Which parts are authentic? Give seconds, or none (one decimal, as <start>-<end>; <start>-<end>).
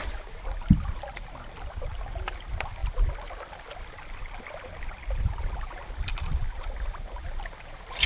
0.0-8.1